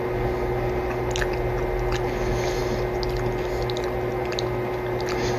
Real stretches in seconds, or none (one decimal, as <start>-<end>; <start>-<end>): 0.0-5.4